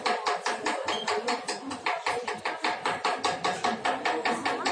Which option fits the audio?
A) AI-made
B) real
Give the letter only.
B